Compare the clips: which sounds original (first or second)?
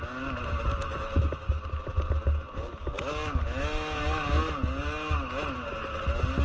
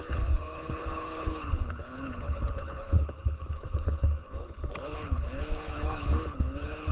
first